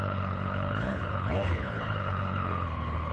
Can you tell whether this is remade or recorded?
remade